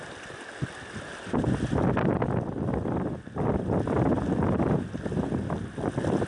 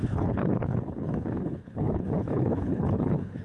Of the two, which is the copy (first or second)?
second